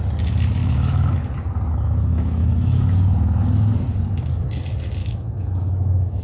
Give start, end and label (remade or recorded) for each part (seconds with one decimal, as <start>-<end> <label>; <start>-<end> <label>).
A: 0.0-0.6 recorded; 0.6-1.1 remade; 1.1-2.1 recorded; 2.1-2.8 remade; 2.8-5.0 recorded; 5.0-6.2 remade